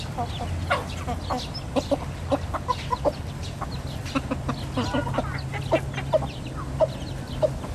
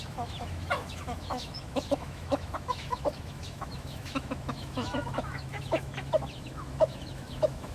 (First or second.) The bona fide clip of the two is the first